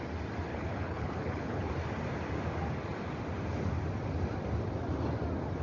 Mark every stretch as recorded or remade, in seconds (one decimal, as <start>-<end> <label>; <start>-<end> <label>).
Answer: 0.0-0.5 recorded; 0.5-1.7 remade; 1.7-5.6 recorded